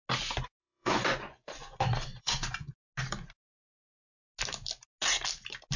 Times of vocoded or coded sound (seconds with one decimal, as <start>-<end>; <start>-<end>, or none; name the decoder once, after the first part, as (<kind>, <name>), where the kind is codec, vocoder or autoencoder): 0.6-2.7 (vocoder, Vocos)